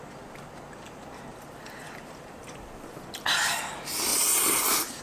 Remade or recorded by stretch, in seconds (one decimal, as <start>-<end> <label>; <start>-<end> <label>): 0.0-1.3 recorded; 1.3-3.2 remade; 3.2-4.1 recorded; 4.1-5.0 remade